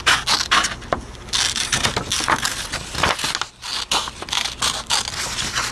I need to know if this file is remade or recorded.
recorded